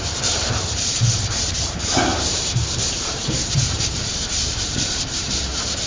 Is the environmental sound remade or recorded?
remade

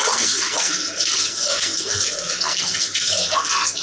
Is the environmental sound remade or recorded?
remade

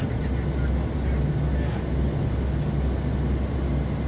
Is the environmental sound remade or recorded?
recorded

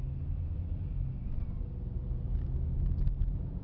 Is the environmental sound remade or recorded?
recorded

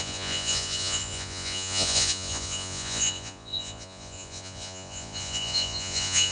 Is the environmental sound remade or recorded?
remade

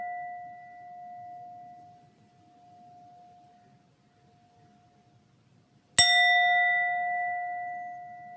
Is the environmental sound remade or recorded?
recorded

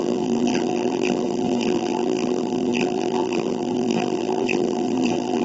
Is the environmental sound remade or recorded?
remade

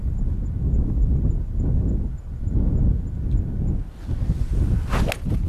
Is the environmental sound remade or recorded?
recorded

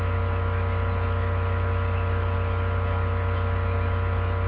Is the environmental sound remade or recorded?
recorded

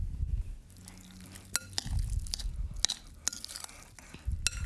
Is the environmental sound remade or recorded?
recorded